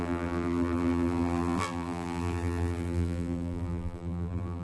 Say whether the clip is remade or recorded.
remade